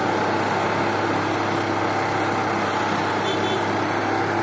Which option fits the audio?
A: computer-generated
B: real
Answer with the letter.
B